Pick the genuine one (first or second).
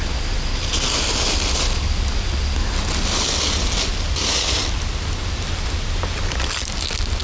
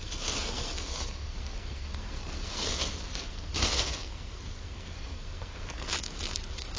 first